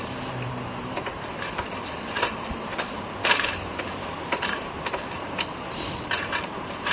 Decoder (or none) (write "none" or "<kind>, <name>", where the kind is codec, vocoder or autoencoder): vocoder, BigVGAN v2